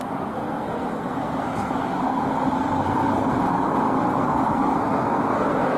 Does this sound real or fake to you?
fake